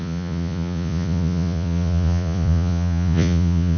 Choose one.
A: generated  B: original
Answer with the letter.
A